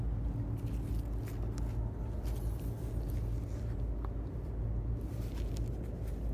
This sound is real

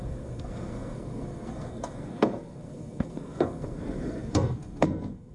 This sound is fake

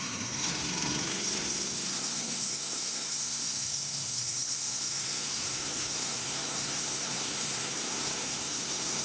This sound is fake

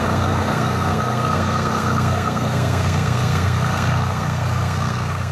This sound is fake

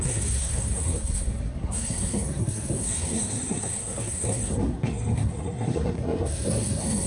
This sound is fake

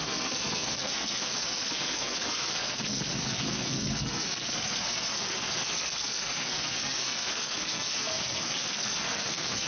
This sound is fake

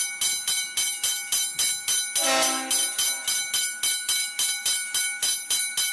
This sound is real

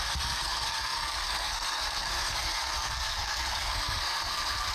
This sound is fake